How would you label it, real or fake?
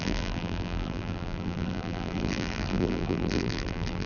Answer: fake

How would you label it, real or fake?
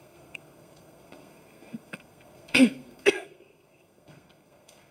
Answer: fake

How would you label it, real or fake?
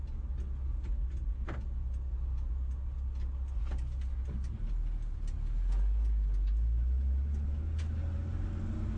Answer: real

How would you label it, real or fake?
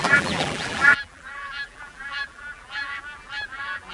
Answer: fake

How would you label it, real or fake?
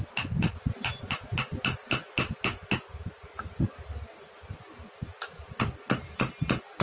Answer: real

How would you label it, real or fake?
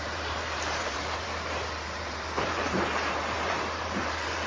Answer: fake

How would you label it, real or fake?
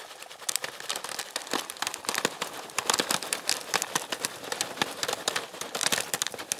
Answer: real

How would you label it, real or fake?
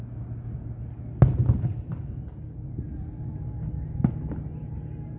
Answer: real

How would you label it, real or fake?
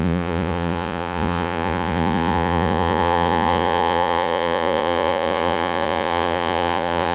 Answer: fake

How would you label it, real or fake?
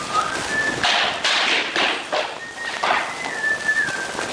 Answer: real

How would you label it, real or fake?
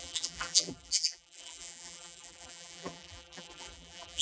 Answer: fake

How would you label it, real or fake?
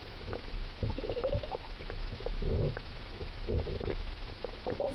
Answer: fake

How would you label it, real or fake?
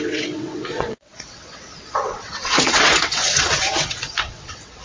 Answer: fake